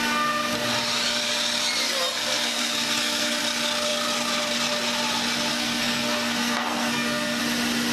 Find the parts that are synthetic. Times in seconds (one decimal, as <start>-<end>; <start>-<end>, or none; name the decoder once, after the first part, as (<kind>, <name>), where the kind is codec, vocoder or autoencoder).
2.2-3.4 (codec, SNAC); 5.5-7.4